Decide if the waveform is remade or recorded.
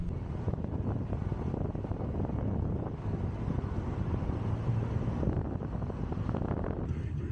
recorded